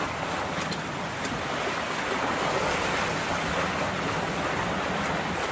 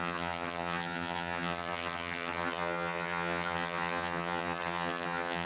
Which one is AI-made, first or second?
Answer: second